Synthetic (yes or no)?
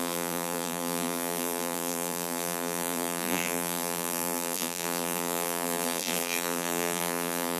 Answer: yes